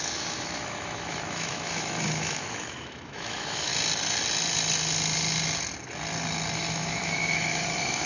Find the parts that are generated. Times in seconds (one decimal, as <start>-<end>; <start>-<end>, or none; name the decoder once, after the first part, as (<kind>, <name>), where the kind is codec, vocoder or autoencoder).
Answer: 0.0-3.7 (autoencoder, DAC-VAE); 6.5-8.1

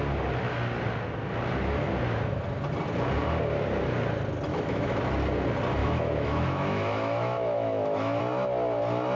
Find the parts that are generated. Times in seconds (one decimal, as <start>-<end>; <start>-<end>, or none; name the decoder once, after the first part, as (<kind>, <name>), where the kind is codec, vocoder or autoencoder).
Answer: 4.5-5.0 (autoencoder, DAC-VAE); 5.8-8.2

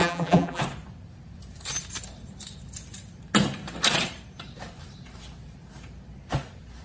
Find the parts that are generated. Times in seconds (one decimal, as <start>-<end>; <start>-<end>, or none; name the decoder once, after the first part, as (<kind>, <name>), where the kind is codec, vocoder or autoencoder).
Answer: 0.0-0.6 (vocoder, BigVGAN v2)

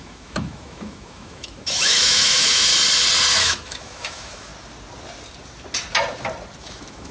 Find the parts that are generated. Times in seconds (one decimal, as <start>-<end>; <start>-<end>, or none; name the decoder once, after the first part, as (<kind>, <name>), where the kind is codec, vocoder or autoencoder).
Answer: 0.0-2.7 (autoencoder, DAC-VAE); 3.3-4.5; 6.6-7.1

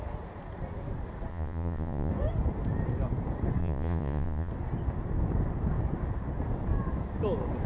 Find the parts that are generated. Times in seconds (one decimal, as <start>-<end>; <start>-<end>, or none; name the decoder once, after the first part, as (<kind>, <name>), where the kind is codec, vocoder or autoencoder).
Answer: 1.3-2.1 (vocoder, Vocos); 3.6-4.5